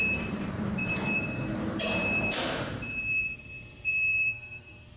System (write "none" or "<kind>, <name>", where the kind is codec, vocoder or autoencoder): vocoder, BigVGAN v2